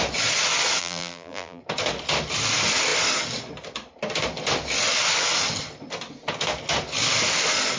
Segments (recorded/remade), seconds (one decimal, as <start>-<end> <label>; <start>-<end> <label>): 0.0-0.8 recorded; 0.8-1.6 remade; 1.6-7.8 recorded